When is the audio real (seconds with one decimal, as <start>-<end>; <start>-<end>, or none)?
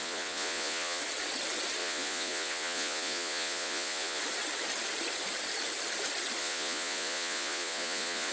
1.0-1.8; 4.2-6.4